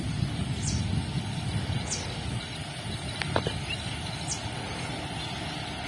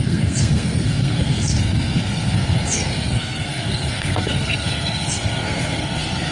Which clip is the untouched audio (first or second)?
first